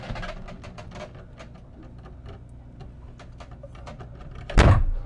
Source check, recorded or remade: recorded